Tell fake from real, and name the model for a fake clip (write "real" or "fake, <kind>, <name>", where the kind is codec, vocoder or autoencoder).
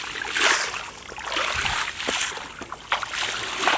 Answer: real